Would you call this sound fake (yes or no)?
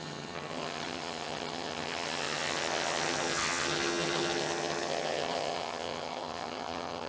yes